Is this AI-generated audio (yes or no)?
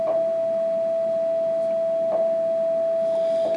no